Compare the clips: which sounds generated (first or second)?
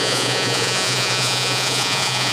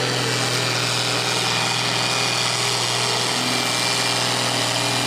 first